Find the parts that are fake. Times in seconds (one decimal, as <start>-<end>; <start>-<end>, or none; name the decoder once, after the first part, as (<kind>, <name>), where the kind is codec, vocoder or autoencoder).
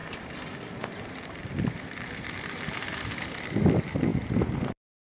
0.0-5.2 (vocoder, BigVGAN v2)